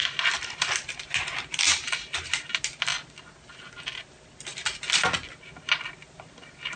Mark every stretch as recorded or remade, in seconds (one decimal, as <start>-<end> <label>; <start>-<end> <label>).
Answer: 0.0-6.8 recorded